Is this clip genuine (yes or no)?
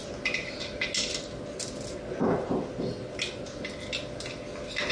yes